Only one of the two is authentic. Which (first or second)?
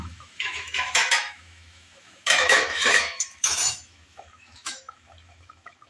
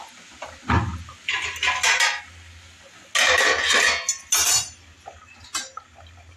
second